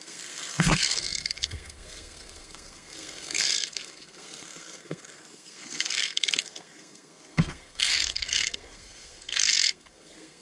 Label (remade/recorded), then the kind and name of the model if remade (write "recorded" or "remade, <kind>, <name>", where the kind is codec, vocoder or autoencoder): remade, codec, SNAC